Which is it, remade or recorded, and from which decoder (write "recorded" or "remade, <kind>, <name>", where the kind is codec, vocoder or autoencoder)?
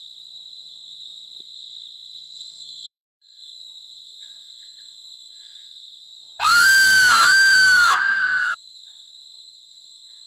remade, codec, SNAC